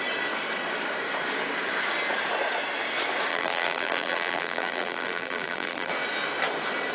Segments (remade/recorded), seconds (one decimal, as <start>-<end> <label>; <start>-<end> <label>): 0.0-3.3 recorded; 3.3-5.9 remade; 5.9-6.9 recorded